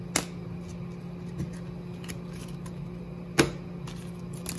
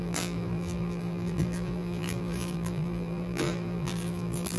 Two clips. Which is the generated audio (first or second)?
second